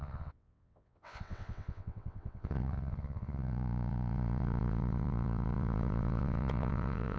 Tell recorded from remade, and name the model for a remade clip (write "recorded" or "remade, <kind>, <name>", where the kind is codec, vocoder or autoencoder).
remade, vocoder, WaveNeXt